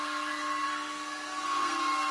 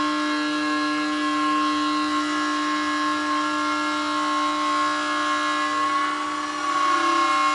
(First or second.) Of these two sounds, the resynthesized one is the first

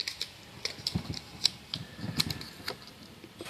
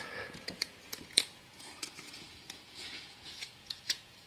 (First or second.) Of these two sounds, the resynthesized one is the second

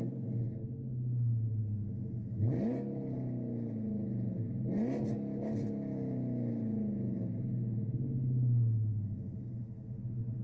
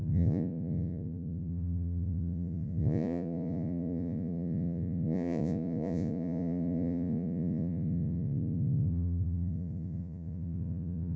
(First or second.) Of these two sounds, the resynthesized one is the second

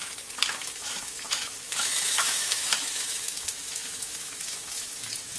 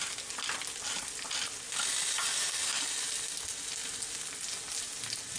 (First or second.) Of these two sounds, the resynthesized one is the first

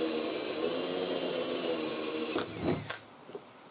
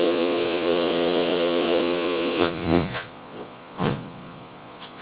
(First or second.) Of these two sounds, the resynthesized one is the second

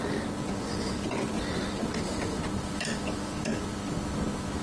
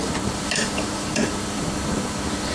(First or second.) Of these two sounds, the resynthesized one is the second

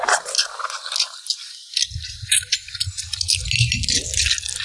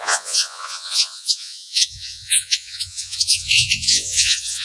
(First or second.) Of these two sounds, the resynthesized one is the second